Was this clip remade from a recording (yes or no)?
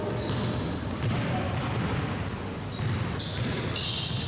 no